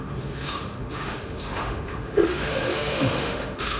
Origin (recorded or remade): remade